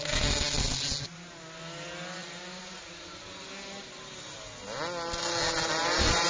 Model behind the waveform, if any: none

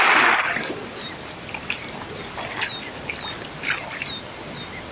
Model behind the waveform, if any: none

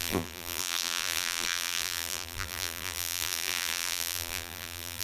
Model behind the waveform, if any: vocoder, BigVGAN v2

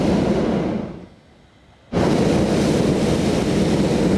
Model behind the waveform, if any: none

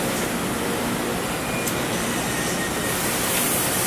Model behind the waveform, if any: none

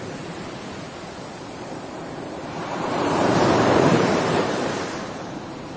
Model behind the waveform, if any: vocoder, BigVGAN v2